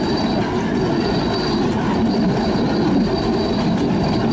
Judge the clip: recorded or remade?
recorded